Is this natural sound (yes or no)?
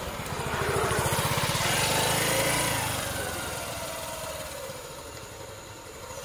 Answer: yes